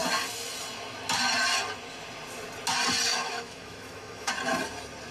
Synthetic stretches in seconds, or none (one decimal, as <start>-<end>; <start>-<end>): 3.1-4.3